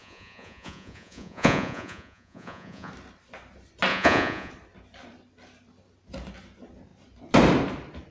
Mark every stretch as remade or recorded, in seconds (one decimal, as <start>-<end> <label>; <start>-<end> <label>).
0.0-2.9 remade; 2.9-3.9 recorded; 3.9-4.5 remade; 4.5-8.1 recorded